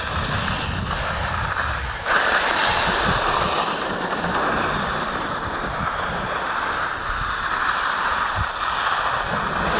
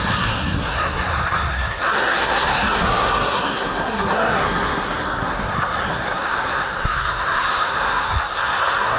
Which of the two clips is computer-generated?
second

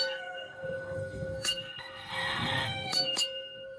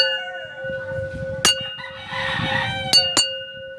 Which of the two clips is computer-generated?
first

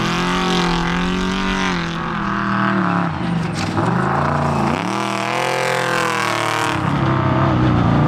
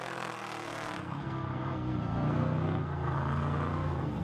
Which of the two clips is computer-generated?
second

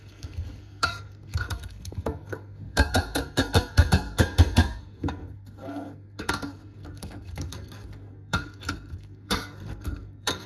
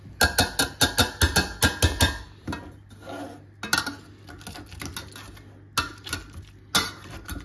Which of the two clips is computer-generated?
first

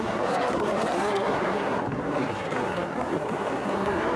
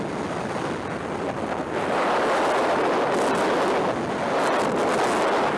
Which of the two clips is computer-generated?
first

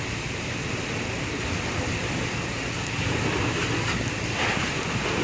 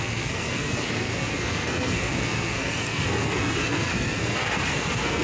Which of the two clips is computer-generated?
second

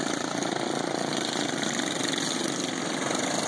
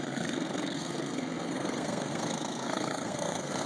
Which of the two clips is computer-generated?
second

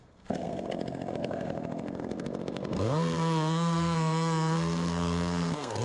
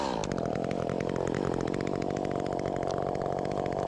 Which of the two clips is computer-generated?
first